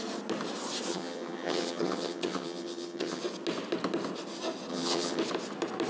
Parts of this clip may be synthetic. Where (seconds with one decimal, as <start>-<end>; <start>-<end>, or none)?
0.9-3.2; 4.7-5.2